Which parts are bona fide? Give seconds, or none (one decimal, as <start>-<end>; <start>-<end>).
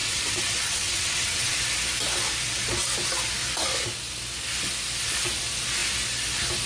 1.5-6.7